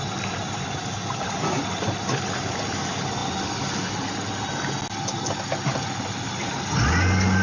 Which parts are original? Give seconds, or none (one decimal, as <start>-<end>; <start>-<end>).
0.0-7.4